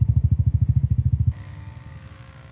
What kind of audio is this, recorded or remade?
remade